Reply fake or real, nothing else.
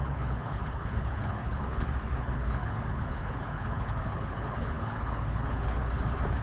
fake